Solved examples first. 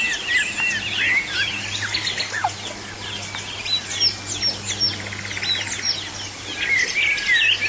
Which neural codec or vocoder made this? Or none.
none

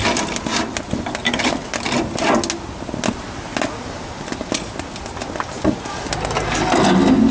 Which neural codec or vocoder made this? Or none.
none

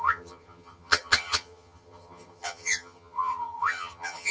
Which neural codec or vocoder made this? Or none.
vocoder, HiFi-GAN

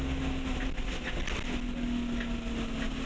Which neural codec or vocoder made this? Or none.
none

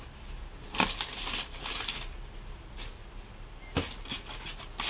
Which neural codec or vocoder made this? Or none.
none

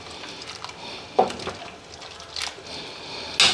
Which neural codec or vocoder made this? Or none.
none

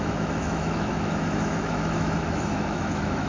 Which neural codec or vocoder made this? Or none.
autoencoder, DAC-VAE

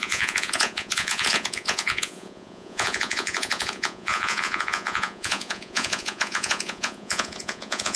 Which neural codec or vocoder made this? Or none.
vocoder, Vocos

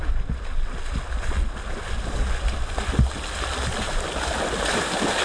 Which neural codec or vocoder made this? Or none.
none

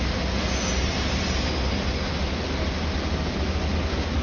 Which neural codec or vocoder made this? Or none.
none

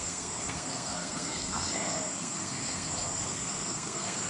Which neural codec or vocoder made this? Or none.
codec, SNAC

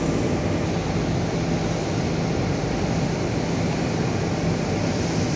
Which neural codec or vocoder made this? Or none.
none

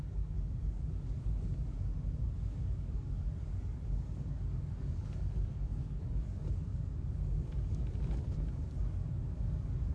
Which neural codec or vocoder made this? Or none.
codec, DAC